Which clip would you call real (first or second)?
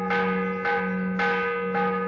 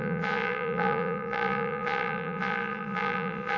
first